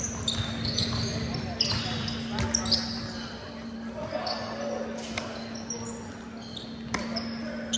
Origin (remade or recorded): recorded